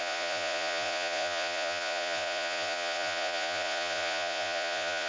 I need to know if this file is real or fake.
fake